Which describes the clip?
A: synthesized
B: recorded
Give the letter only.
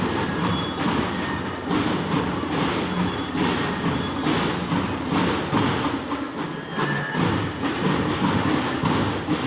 B